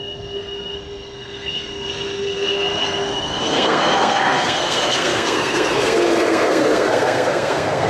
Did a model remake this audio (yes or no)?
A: yes